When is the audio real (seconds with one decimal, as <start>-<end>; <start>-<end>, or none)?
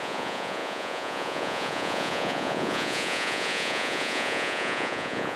none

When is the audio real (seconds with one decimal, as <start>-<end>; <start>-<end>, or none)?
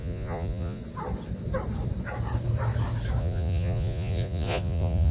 0.8-3.2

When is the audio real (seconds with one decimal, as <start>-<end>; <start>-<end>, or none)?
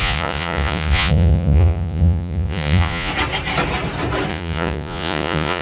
3.1-4.3